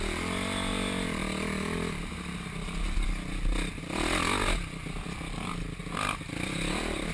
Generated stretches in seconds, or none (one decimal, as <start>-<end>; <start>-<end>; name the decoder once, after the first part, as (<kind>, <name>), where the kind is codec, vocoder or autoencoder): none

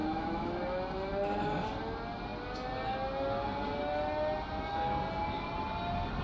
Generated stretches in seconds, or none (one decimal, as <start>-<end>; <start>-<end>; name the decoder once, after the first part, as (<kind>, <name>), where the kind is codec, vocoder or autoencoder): 0.0-0.6 (autoencoder, DAC-VAE)

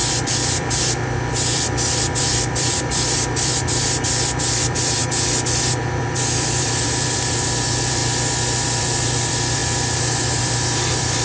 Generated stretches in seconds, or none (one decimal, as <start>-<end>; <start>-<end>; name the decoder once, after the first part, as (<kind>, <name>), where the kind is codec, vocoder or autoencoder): 0.0-8.0 (vocoder, BigVGAN v2); 8.8-9.6; 10.4-11.2